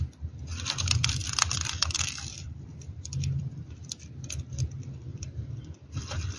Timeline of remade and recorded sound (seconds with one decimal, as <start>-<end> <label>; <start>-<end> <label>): 0.0-1.2 recorded; 1.2-3.7 remade; 3.7-5.1 recorded; 5.1-6.0 remade; 6.0-6.4 recorded